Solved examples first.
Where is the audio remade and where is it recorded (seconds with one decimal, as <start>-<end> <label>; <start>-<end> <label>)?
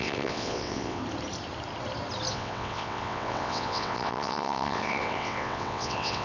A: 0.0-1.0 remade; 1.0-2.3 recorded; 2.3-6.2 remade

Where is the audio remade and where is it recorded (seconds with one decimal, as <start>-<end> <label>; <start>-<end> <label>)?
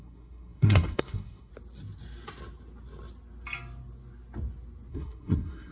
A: 0.0-1.5 remade; 1.5-4.9 recorded; 4.9-5.7 remade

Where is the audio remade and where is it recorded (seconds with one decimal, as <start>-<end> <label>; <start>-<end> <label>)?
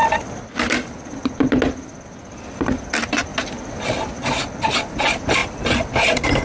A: 0.0-6.4 recorded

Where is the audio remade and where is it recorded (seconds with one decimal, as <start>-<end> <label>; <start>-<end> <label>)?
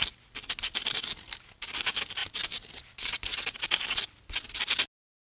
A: 0.0-5.2 recorded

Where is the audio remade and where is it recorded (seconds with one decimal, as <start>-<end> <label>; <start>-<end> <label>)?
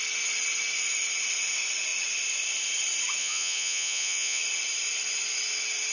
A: 0.0-3.2 recorded; 3.2-4.4 remade; 4.4-5.9 recorded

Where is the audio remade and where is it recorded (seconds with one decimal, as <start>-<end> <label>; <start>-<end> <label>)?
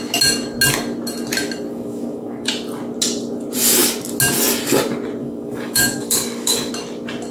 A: 0.0-1.7 recorded; 1.7-2.5 remade; 2.5-5.2 recorded; 5.2-6.7 remade; 6.7-7.3 recorded